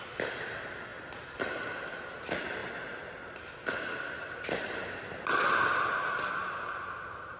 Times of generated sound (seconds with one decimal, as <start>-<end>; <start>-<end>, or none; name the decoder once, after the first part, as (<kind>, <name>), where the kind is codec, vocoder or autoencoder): none